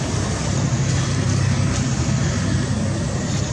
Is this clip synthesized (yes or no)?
no